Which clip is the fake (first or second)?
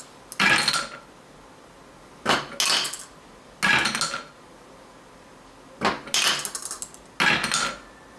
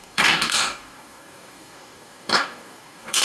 second